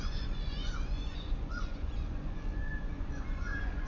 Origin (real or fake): fake